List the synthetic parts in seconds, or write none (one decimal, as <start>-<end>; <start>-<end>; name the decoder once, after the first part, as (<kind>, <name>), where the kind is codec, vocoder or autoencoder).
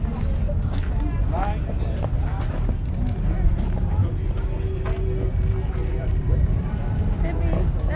5.8-7.0 (vocoder, BigVGAN v2)